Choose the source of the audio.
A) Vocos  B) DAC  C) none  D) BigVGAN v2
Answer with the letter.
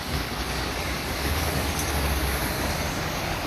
B